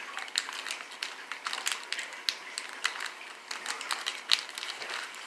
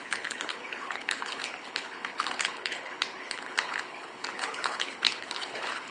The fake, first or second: second